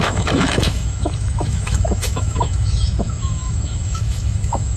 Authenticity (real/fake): fake